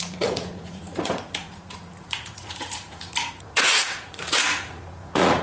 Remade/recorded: remade